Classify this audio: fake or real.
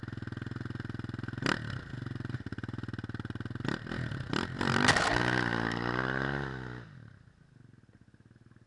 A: real